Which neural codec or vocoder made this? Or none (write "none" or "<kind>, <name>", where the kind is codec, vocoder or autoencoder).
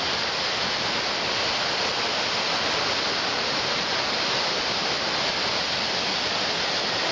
none